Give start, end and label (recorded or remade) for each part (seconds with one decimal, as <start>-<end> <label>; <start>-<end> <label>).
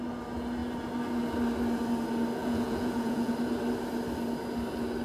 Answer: 0.0-2.4 recorded; 2.4-3.3 remade; 3.3-5.0 recorded